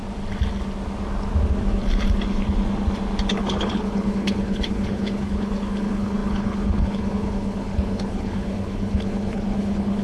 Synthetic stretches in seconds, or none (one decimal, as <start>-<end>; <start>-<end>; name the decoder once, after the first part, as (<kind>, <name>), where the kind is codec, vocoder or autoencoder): 3.3-10.0 (codec, HILCodec)